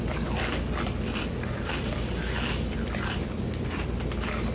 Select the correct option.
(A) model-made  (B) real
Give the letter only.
B